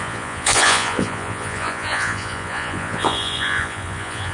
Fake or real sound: fake